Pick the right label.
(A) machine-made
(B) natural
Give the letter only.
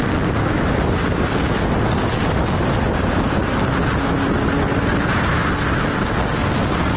B